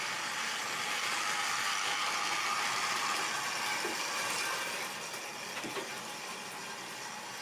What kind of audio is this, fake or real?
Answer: real